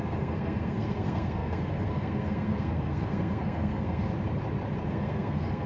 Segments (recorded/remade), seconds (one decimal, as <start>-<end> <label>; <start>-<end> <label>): 0.0-4.1 remade; 4.1-4.9 recorded; 4.9-5.7 remade